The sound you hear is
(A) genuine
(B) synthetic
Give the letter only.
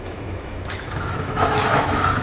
B